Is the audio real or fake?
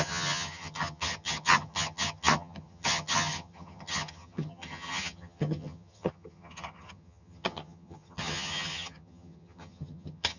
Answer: fake